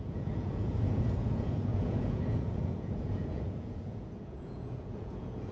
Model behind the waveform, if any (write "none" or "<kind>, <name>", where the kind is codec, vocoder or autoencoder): vocoder, Vocos